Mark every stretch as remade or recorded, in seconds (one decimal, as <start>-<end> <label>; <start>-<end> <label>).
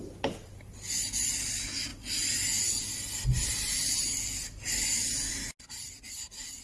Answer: 0.0-6.6 recorded